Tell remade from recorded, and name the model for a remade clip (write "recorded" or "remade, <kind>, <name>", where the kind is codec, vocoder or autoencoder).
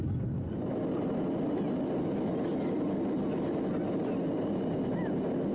recorded